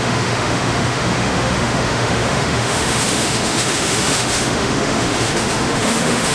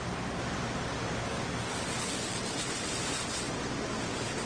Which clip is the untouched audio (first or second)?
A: second